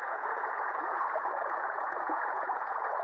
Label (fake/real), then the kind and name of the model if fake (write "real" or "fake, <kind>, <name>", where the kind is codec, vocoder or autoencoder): fake, vocoder, Vocos